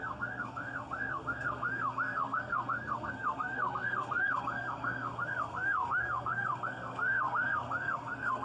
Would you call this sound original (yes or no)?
no